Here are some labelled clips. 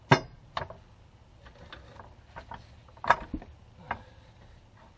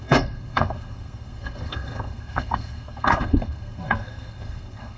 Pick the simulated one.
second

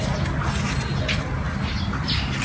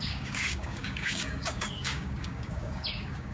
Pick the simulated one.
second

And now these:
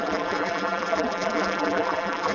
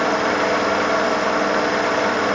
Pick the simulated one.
first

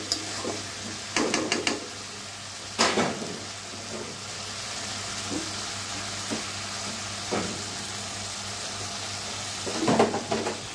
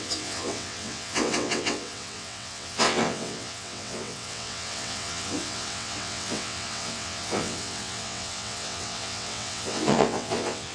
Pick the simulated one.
second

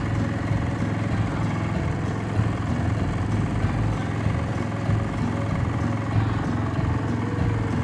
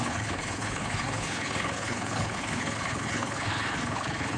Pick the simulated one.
second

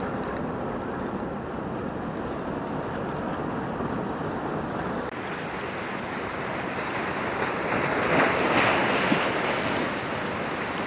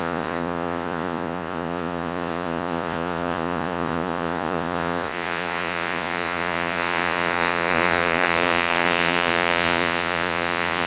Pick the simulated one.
second